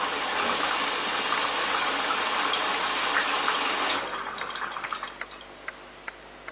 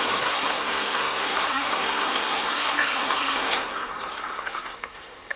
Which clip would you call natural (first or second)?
first